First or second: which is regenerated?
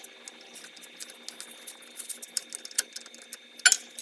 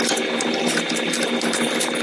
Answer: second